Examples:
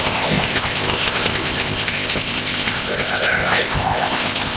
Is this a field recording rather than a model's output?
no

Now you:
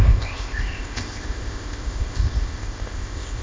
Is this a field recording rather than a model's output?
no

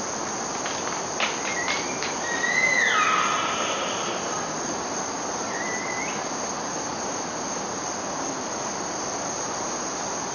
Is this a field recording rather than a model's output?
yes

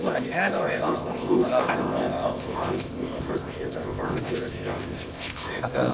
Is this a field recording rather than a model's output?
no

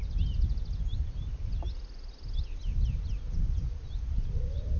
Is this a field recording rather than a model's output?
yes